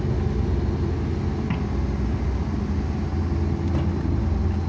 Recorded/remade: recorded